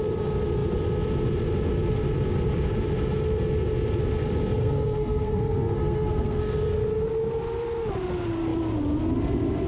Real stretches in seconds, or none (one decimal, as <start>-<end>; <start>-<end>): 0.0-4.6; 6.4-9.7